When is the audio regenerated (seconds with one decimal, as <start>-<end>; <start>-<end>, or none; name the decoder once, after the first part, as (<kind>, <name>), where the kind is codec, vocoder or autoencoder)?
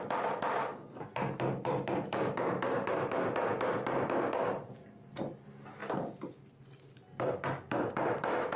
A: none